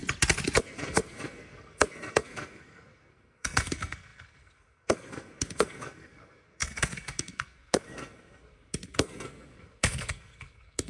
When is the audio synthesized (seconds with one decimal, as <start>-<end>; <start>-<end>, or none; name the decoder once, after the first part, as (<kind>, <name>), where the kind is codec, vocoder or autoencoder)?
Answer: 0.6-10.9 (codec, SNAC)